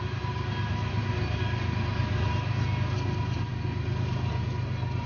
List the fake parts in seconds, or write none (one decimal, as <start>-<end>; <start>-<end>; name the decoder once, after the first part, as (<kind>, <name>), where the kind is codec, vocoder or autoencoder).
1.2-2.0 (vocoder, BigVGAN v2)